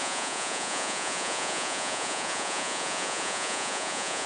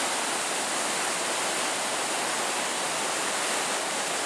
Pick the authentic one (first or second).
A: second